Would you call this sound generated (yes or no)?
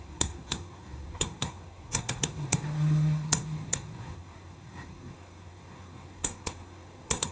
yes